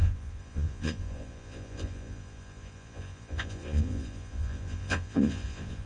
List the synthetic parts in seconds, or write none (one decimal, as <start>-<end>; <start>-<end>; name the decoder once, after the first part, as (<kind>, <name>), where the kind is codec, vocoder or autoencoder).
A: 0.0-5.9 (vocoder, Vocos)